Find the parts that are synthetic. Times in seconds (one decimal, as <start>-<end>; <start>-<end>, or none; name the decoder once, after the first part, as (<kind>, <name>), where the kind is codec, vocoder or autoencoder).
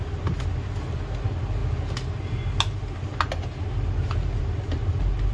none